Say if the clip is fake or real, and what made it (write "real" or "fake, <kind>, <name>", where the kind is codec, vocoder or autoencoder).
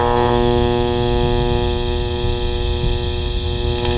real